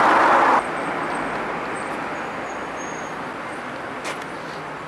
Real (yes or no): yes